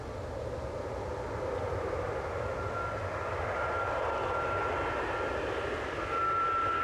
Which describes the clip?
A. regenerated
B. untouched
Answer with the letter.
B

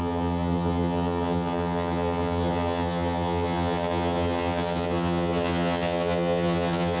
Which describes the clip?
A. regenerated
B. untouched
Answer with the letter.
A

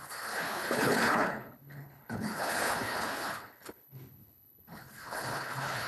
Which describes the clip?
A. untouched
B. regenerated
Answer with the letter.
B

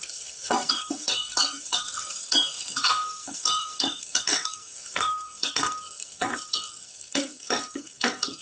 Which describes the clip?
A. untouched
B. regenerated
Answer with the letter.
B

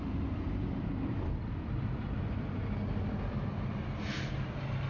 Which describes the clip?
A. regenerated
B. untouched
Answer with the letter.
B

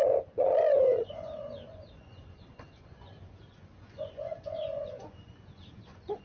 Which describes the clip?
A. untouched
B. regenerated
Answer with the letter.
B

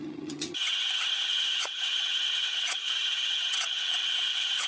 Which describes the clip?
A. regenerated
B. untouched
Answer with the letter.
A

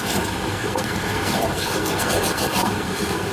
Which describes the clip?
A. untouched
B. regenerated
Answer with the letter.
B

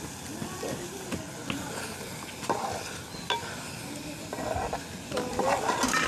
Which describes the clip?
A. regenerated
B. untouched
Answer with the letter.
B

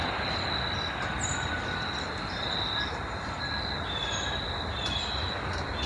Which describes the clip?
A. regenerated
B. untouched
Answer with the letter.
B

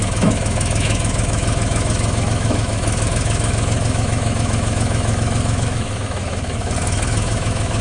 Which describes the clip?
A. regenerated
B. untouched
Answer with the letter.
A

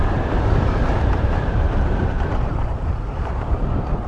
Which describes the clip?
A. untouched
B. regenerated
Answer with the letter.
B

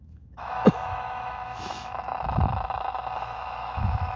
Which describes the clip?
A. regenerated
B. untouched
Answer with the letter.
A